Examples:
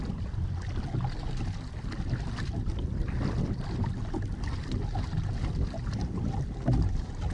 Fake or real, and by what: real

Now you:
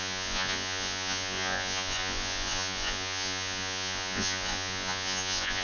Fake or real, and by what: fake, vocoder, Vocos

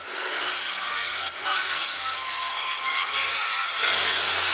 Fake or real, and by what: fake, codec, SNAC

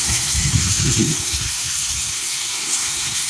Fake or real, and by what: fake, codec, SNAC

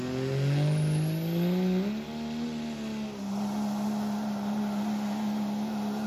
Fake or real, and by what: real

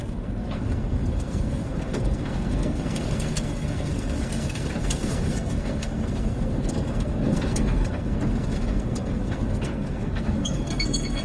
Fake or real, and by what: fake, codec, SNAC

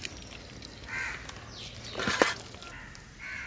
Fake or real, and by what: real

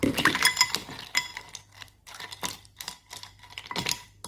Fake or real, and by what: real